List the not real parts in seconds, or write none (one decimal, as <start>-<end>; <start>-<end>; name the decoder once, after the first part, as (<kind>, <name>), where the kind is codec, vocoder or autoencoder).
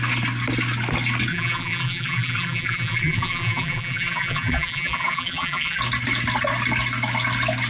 1.3-5.8 (vocoder, BigVGAN v2)